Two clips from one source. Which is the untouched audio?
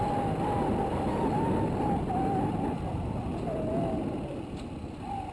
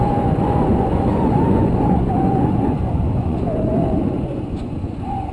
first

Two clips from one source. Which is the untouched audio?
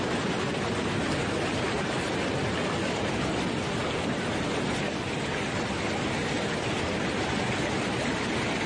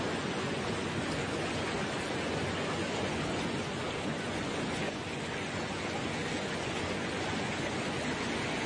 first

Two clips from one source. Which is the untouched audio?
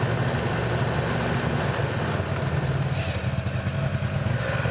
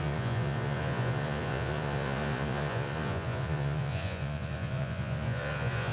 first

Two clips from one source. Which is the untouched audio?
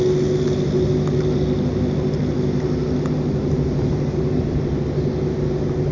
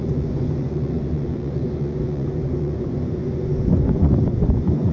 first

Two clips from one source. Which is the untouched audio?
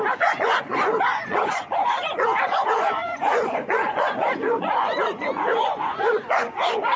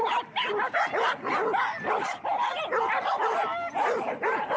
second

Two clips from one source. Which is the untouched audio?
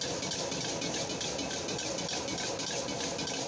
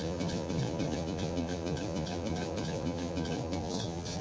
first